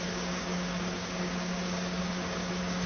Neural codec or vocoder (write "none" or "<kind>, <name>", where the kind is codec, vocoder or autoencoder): codec, DAC